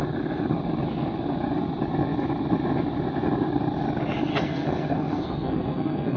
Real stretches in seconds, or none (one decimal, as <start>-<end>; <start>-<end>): 0.0-4.3